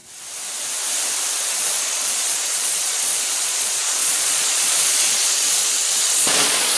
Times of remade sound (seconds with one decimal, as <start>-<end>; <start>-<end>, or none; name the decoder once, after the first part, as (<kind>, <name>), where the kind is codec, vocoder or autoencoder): 1.6-6.8 (vocoder, Vocos)